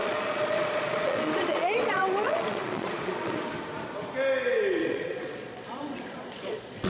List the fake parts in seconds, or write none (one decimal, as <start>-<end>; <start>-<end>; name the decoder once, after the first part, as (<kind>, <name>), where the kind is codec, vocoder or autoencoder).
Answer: 0.0-3.5 (vocoder, Vocos); 4.8-6.9